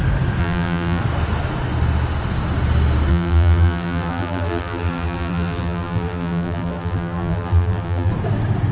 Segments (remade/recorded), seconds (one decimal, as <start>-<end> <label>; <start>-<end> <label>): 0.0-0.4 recorded; 0.4-1.0 remade; 1.0-3.1 recorded; 3.1-8.1 remade; 8.1-8.7 recorded